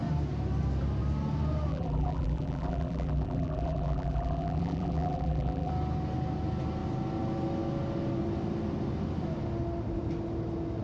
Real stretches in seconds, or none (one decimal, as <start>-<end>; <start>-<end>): 0.0-1.7; 5.7-10.8